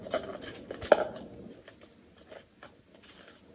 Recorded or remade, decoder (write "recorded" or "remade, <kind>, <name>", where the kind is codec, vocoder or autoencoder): remade, vocoder, BigVGAN v2